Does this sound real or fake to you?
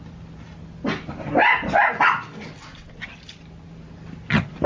real